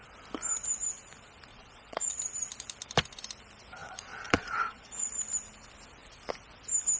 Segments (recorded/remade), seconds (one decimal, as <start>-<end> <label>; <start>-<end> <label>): 0.0-1.5 recorded; 1.5-2.2 remade; 2.2-3.8 recorded; 3.8-5.1 remade; 5.1-7.0 recorded